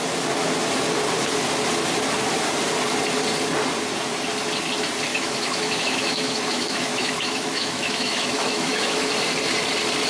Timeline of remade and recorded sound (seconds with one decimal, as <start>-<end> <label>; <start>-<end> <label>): 0.0-5.1 recorded; 5.1-9.1 remade; 9.1-10.1 recorded